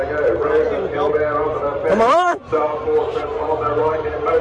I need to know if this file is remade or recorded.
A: remade